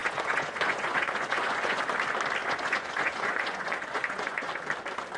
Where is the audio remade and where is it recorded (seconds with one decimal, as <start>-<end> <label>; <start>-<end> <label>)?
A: 0.0-1.8 remade; 1.8-2.4 recorded; 2.4-4.5 remade; 4.5-5.2 recorded